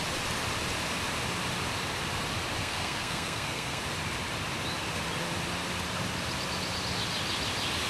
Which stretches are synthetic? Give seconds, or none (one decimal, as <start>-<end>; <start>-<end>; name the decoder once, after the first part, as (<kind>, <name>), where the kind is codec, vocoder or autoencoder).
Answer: 2.6-3.8 (codec, SNAC)